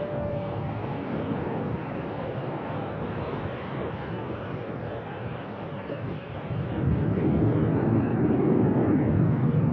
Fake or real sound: fake